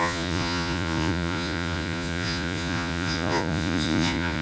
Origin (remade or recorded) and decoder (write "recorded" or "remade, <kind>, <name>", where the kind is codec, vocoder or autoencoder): remade, vocoder, Vocos